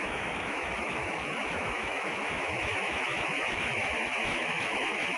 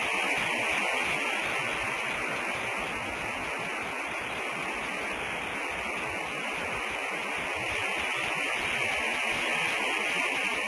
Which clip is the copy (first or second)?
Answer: first